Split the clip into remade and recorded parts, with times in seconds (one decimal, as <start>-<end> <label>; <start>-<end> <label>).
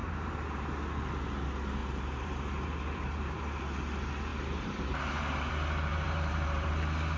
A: 0.0-0.6 remade; 0.6-1.8 recorded; 1.8-3.6 remade; 3.6-4.3 recorded; 4.3-5.5 remade; 5.5-5.9 recorded; 5.9-6.7 remade; 6.7-7.2 recorded